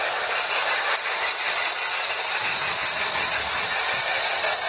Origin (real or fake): real